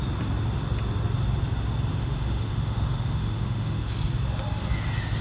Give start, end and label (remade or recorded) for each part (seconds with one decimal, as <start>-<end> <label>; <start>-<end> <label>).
0.0-1.9 recorded; 1.9-3.8 remade; 3.8-5.2 recorded